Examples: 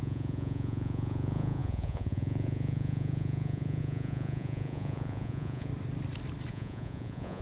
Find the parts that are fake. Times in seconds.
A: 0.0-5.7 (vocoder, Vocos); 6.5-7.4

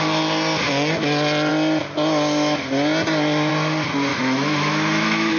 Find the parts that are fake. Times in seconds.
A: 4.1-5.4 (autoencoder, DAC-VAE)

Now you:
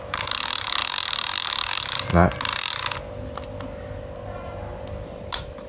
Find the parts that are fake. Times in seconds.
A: none

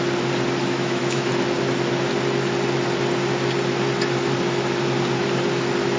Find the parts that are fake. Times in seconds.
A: 0.6-1.3 (autoencoder, DAC-VAE)

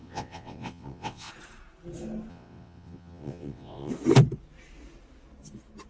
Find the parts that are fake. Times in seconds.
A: 0.0-1.3 (vocoder, WaveNeXt); 2.3-3.9

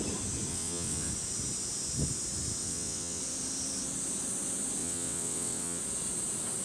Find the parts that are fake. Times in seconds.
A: 0.5-1.1 (vocoder, WaveNeXt); 2.6-3.2; 4.8-5.8

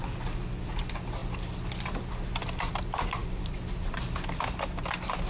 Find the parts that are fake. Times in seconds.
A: 3.2-4.1 (vocoder, BigVGAN v2)

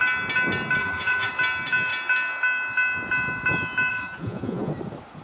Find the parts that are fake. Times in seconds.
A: 0.8-1.3 (vocoder, Vocos); 3.9-4.7